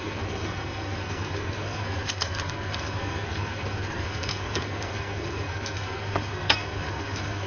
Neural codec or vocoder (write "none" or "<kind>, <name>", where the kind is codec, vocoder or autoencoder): codec, SNAC